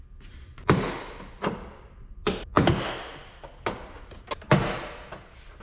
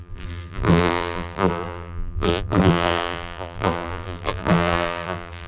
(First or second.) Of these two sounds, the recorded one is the first